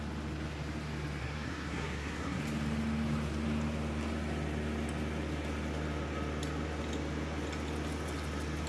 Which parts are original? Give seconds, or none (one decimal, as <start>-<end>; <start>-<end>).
0.0-1.2; 2.4-8.7